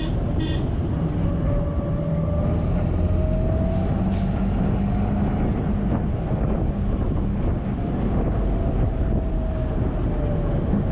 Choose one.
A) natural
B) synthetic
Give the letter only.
A